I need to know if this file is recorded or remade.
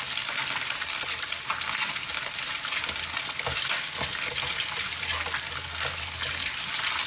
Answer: recorded